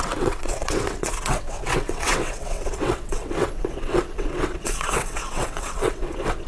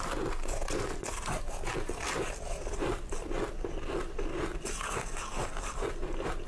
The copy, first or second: first